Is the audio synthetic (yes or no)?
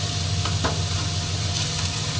no